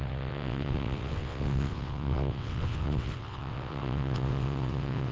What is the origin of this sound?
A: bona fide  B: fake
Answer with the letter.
B